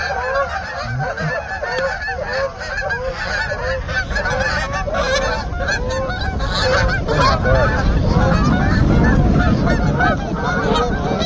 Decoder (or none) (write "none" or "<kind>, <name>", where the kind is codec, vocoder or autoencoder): none